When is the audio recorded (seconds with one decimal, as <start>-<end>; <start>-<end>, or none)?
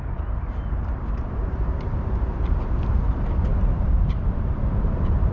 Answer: none